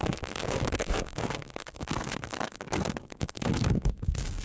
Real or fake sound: fake